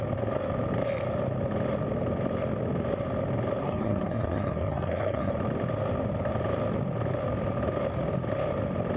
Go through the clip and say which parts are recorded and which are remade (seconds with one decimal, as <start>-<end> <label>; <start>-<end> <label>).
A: 0.0-3.6 recorded; 3.6-5.3 remade; 5.3-9.0 recorded